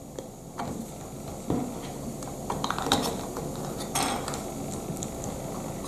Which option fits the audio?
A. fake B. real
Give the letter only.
B